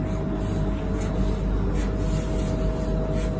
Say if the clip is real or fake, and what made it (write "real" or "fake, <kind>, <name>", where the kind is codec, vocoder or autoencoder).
real